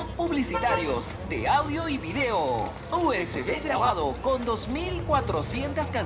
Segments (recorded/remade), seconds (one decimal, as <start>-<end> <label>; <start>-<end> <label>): 0.0-3.2 recorded; 3.2-3.9 remade; 3.9-6.1 recorded